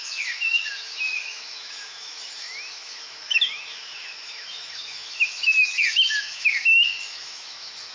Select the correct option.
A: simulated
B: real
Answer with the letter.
A